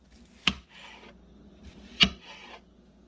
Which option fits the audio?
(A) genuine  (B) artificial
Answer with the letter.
A